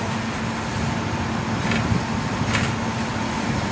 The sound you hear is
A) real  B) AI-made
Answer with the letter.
A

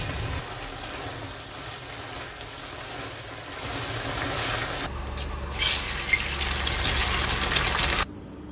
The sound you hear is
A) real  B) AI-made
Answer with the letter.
A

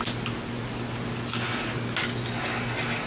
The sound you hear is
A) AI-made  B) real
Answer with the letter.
B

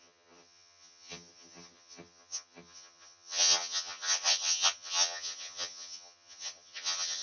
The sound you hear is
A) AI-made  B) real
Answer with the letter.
A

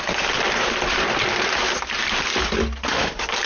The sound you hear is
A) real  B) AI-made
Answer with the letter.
A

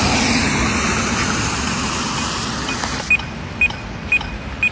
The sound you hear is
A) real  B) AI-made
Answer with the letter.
A